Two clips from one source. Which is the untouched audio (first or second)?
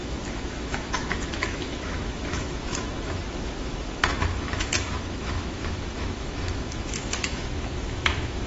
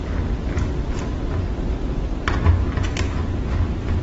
second